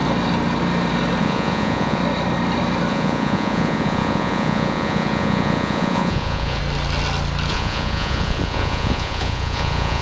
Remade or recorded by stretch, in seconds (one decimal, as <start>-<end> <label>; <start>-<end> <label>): 0.0-1.2 recorded; 1.2-2.0 remade; 2.0-2.9 recorded; 2.9-6.6 remade; 6.6-7.5 recorded; 7.5-10.0 remade